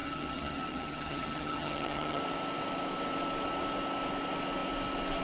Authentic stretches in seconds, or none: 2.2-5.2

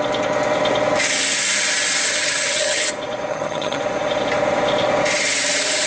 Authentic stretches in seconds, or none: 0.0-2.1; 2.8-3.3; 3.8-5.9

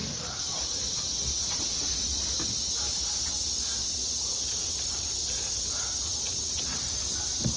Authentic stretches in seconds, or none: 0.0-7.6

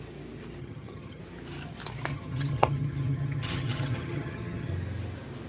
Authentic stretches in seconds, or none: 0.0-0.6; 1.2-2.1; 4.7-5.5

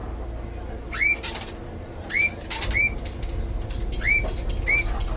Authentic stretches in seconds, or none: 0.0-5.2